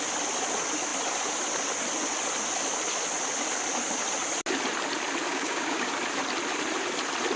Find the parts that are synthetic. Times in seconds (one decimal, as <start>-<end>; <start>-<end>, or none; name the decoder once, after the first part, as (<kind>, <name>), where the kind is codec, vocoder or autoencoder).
5.3-5.9 (codec, DAC)